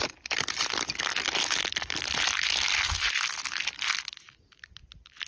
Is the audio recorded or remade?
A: recorded